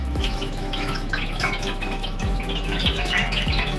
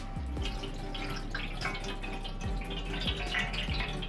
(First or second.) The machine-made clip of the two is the first